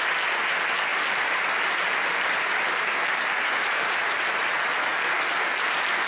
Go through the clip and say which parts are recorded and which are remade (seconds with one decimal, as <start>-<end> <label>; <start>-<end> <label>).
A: 0.0-0.9 recorded; 0.9-4.0 remade; 4.0-6.1 recorded